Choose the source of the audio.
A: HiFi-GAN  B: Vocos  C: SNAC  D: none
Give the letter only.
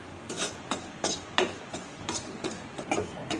B